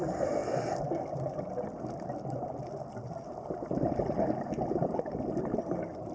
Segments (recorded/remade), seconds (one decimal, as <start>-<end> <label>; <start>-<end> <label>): 0.0-6.1 recorded